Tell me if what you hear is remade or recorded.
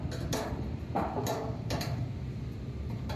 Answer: remade